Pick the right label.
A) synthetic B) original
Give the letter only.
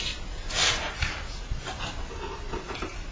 B